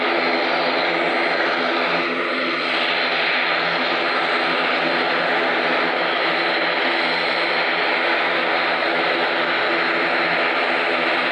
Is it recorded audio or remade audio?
recorded